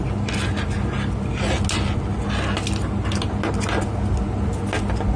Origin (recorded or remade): recorded